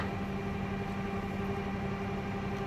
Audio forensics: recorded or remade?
recorded